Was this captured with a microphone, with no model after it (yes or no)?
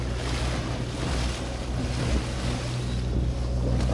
yes